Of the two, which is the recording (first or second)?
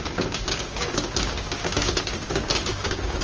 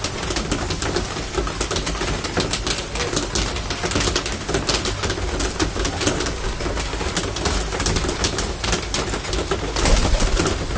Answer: second